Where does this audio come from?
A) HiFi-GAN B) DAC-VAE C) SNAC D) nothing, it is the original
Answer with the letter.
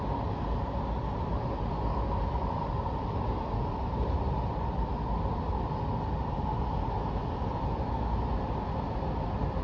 D